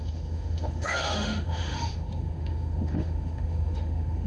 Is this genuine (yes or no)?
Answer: no